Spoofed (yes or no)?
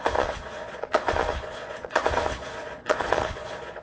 yes